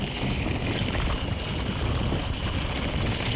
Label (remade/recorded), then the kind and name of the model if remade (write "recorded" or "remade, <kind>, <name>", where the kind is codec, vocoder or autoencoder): recorded